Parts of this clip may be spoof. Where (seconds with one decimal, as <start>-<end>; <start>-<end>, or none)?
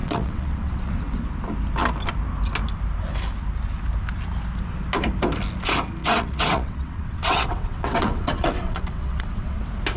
0.0-0.9; 6.0-9.6